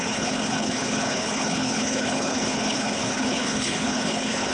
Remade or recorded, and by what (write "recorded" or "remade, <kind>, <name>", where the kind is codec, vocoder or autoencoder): remade, codec, HILCodec